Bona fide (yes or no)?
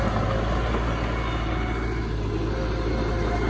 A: yes